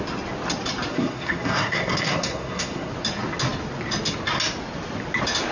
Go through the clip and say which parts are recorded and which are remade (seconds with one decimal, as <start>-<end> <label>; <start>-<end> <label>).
0.0-0.9 recorded; 0.9-2.9 remade; 2.9-5.5 recorded